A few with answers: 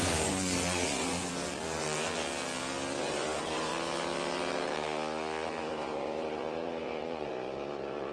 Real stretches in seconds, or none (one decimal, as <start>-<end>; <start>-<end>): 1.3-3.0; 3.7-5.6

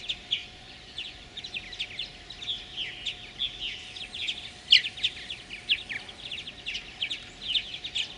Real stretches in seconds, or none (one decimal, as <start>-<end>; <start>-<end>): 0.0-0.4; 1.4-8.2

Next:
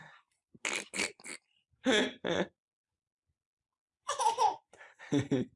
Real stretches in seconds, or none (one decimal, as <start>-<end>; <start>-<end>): 0.0-2.0; 5.0-5.6

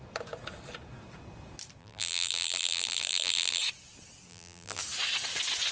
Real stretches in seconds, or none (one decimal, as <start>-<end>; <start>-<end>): 0.0-1.8; 3.6-4.3; 4.8-5.7

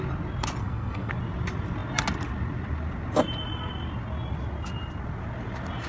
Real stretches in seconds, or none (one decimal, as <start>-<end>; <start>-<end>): 0.0-0.6; 1.1-5.9

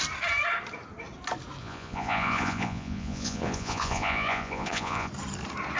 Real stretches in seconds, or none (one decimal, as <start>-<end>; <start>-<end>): 0.0-1.6; 5.1-5.8